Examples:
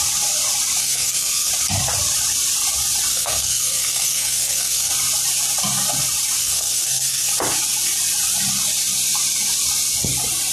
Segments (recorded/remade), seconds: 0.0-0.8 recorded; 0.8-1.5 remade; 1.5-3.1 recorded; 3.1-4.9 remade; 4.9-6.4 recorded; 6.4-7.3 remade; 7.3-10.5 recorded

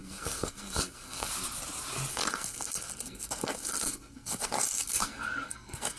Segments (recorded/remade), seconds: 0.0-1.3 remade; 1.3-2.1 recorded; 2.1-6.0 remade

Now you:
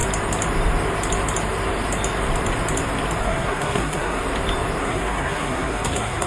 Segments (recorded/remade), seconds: 0.0-3.2 recorded; 3.2-4.2 remade; 4.2-4.8 recorded; 4.8-6.3 remade

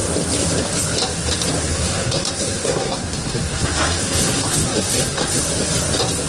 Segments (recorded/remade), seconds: 0.0-1.6 recorded; 1.6-5.4 remade; 5.4-6.3 recorded

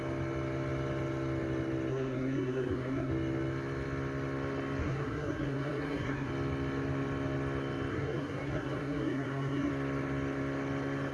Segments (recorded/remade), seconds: 0.0-1.9 recorded; 1.9-3.1 remade; 3.1-4.8 recorded; 4.8-6.3 remade; 6.3-7.9 recorded; 7.9-9.7 remade; 9.7-11.1 recorded

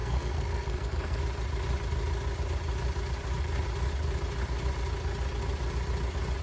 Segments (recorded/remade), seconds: 0.0-1.2 remade; 1.2-6.4 recorded